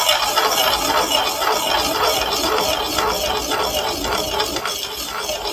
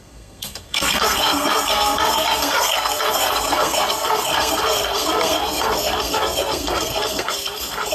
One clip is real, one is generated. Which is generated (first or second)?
second